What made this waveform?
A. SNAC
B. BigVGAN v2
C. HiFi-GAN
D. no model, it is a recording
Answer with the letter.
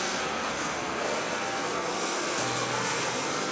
A